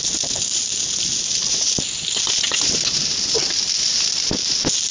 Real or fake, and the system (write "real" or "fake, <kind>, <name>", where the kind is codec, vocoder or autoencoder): real